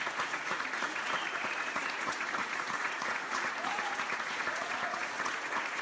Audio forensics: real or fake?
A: fake